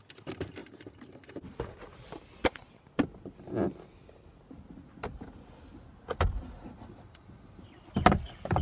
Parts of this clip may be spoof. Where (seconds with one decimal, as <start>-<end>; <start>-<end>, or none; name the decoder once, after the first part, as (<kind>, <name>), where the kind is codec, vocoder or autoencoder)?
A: none